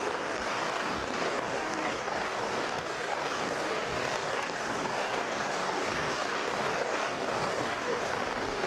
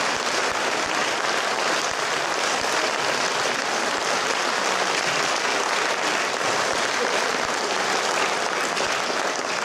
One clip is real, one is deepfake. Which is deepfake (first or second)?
first